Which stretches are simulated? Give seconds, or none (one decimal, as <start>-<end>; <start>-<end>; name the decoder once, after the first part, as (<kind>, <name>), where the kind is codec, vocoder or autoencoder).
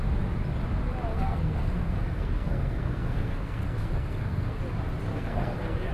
1.1-4.6 (codec, SNAC); 5.1-5.9